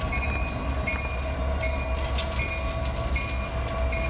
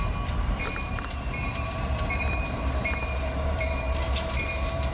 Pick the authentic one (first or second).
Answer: first